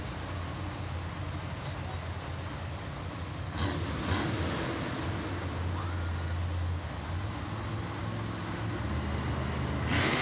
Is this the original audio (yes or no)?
yes